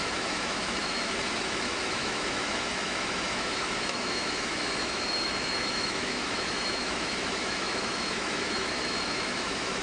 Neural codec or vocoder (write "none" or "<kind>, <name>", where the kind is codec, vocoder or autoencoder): autoencoder, DAC-VAE